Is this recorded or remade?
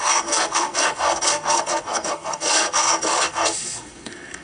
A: remade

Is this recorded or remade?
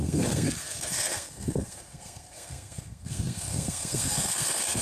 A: remade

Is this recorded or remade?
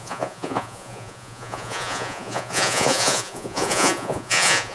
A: remade